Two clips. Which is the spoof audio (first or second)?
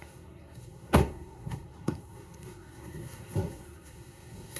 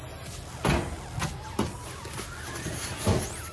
first